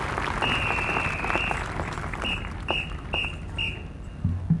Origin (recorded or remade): recorded